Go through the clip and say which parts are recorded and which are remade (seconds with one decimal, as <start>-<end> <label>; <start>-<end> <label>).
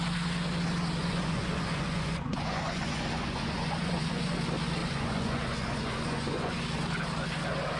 0.0-1.0 recorded; 1.0-4.3 remade; 4.3-4.8 recorded; 4.8-6.6 remade; 6.6-7.8 recorded